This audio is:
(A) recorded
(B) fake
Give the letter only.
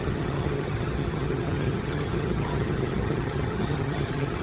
B